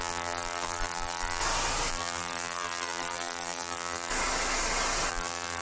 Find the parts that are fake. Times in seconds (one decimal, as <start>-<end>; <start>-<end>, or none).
0.0-1.4; 1.9-4.1; 5.1-5.6